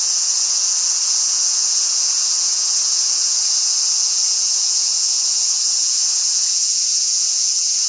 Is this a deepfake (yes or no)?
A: yes